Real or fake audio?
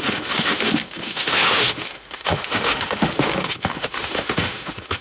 fake